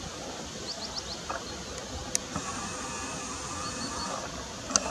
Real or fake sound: real